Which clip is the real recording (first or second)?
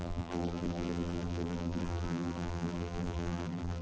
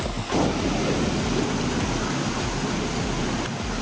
second